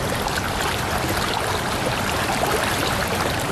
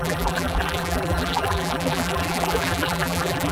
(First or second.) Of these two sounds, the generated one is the second